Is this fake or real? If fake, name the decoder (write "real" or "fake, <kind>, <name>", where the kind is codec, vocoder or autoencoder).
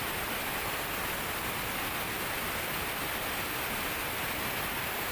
real